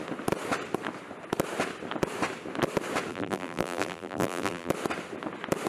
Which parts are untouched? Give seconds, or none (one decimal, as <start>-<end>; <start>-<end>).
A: 0.0-3.1; 4.7-5.7